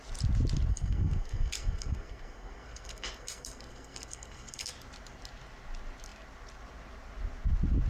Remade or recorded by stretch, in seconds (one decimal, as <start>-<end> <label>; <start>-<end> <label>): 0.0-0.7 recorded; 0.7-4.7 remade; 4.7-7.9 recorded